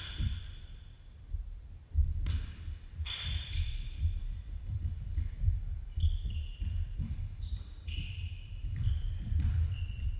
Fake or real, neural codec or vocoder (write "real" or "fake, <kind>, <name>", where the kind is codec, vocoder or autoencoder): fake, vocoder, BigVGAN v2